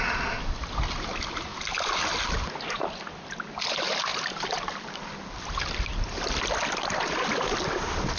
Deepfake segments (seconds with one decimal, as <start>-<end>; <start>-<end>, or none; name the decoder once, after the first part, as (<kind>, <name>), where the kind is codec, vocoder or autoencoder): none